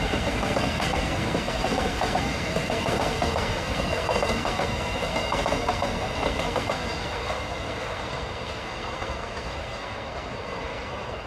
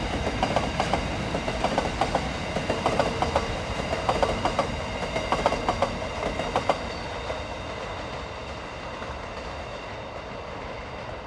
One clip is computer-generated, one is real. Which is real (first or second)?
second